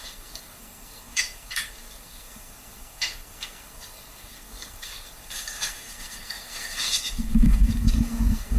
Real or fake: fake